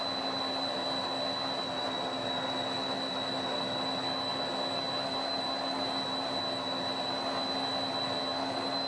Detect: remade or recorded recorded